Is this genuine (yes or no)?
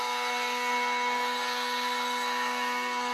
no